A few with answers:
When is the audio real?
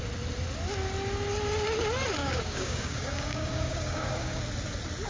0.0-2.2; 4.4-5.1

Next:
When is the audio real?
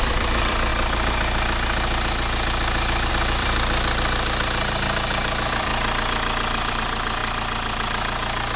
0.7-3.1; 5.7-6.7; 7.2-8.6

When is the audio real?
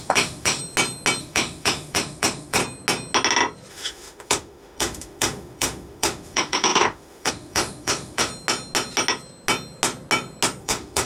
0.6-1.2; 2.6-3.7; 8.3-10.6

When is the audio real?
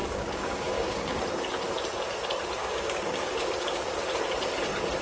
1.2-2.6; 3.5-5.0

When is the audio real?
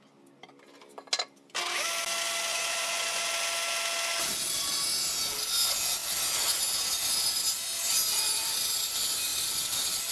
0.0-2.5; 3.3-10.1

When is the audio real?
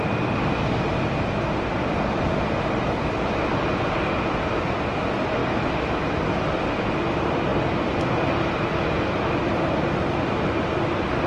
0.0-5.4; 6.2-11.3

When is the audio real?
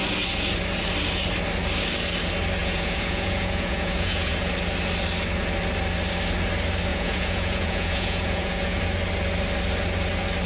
0.0-2.6; 4.5-6.9; 8.8-10.5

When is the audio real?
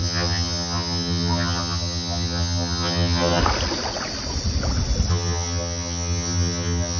3.4-5.1